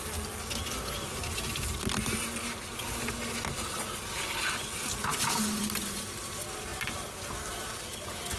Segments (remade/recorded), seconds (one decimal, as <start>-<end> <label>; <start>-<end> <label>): 0.0-8.4 recorded